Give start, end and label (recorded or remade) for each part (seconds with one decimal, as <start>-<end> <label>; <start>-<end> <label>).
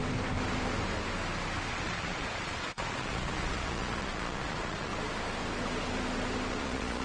0.0-1.7 recorded; 1.7-4.9 remade; 4.9-6.5 recorded; 6.5-7.0 remade